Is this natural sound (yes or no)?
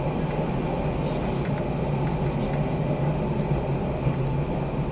yes